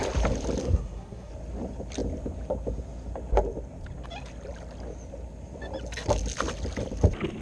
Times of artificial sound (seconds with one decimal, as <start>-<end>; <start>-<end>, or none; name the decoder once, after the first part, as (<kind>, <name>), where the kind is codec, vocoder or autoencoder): 0.6-1.3 (codec, SNAC)